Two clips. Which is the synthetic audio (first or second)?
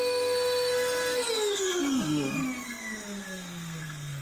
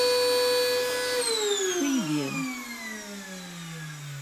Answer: first